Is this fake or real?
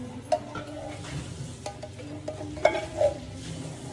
real